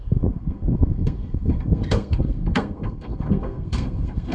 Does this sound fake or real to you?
fake